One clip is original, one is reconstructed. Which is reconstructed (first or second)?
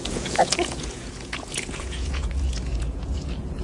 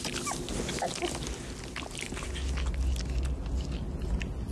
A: first